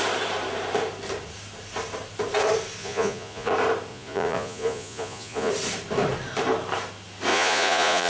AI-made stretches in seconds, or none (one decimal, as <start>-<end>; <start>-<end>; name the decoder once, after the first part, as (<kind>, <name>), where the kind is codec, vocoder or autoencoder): 2.8-3.5 (vocoder, Vocos); 3.9-5.5; 7.3-8.1

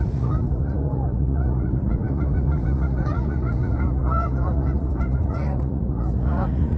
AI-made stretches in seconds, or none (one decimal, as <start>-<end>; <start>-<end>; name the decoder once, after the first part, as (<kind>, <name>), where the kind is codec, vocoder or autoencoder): 0.0-6.8 (vocoder, Vocos)

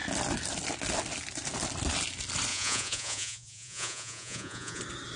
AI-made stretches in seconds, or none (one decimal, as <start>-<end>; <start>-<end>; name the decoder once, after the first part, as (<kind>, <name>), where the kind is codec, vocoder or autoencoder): 2.5-4.8 (vocoder, Vocos)

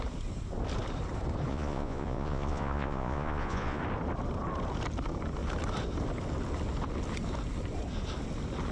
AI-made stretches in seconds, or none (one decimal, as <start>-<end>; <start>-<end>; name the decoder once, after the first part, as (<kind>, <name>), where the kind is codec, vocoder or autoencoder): 1.5-3.8 (vocoder, Vocos)

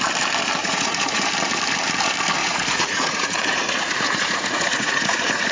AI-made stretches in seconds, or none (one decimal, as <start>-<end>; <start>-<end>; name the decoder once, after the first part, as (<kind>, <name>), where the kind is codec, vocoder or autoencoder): 0.6-1.2 (vocoder, Vocos); 2.4-5.5

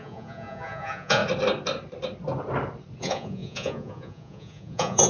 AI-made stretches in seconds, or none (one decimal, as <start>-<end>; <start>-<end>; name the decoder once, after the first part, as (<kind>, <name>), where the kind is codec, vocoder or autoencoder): 0.0-1.2 (vocoder, Vocos); 3.0-5.1

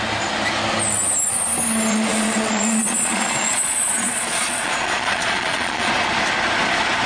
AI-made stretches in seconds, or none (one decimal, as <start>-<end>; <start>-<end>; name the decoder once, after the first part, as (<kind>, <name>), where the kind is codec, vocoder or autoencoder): 1.9-5.9 (vocoder, Vocos)

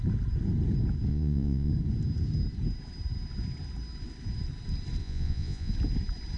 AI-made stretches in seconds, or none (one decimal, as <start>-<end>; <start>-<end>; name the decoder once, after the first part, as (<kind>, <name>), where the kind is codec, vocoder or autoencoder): 1.1-1.7 (vocoder, Vocos); 5.0-5.7